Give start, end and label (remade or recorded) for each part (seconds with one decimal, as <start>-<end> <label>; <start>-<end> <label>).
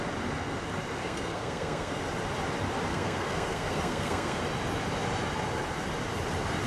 0.0-1.0 recorded; 1.0-2.0 remade; 2.0-2.9 recorded; 2.9-4.4 remade; 4.4-6.7 recorded